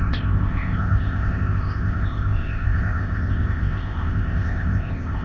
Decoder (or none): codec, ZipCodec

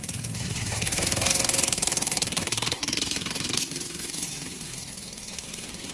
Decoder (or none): codec, SNAC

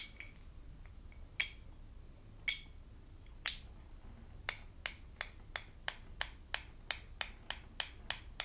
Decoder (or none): none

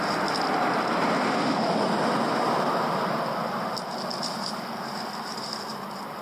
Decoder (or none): none